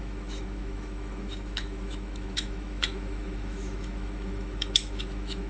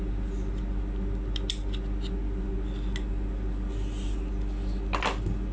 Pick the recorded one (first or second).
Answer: second